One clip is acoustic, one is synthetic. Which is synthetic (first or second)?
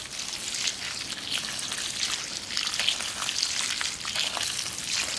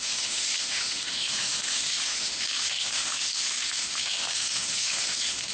second